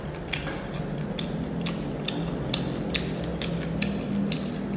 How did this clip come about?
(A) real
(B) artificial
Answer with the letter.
A